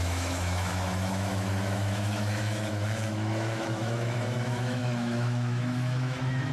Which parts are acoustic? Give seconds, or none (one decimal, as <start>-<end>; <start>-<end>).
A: none